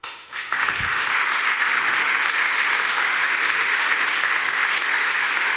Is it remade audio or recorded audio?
remade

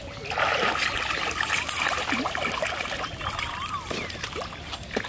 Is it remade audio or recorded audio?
recorded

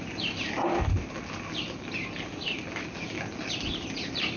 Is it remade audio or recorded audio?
recorded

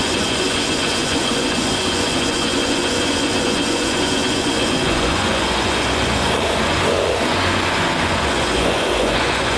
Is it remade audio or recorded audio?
remade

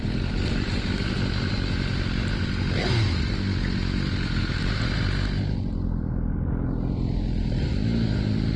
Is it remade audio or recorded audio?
recorded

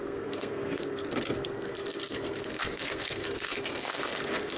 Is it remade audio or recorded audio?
remade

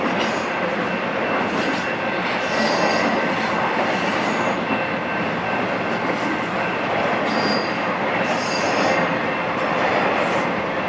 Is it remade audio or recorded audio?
recorded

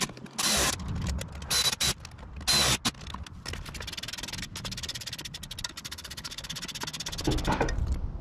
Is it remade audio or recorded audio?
recorded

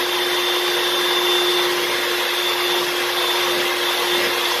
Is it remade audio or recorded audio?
recorded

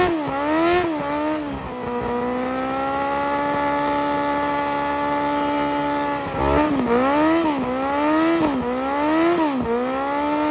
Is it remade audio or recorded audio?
recorded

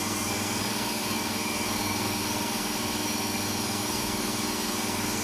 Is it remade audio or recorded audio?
remade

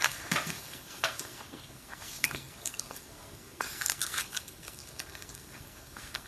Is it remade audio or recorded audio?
remade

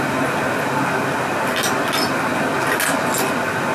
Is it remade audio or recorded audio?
recorded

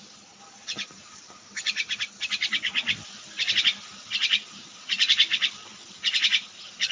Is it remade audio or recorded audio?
remade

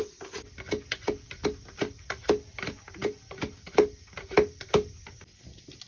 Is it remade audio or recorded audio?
recorded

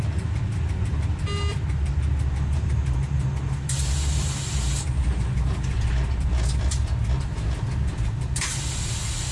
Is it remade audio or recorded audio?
recorded